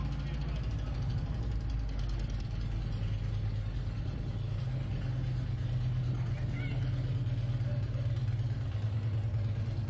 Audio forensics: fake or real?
real